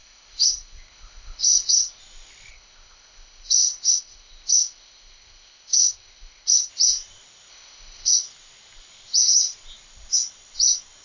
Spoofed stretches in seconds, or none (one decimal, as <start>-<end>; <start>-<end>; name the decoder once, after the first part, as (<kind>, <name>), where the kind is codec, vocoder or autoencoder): 0.0-2.0 (codec, ZipCodec); 2.5-6.7; 7.5-8.1